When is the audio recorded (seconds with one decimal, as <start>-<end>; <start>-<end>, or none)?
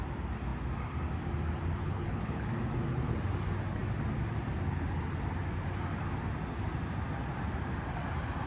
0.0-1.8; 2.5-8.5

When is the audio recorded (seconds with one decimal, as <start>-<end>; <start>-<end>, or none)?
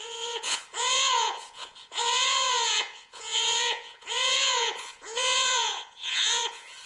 none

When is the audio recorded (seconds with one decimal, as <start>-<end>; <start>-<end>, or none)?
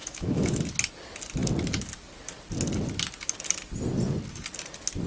0.6-5.1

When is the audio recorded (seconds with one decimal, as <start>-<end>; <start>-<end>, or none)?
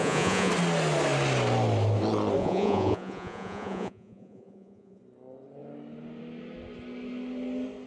0.5-2.4; 5.0-7.9